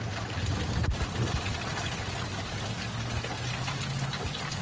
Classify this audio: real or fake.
real